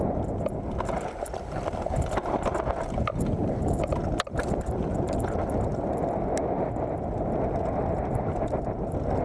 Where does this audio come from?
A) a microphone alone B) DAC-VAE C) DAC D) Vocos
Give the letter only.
A